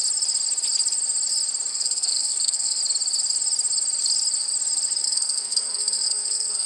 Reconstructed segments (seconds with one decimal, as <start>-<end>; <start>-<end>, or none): 1.7-2.8; 5.0-6.7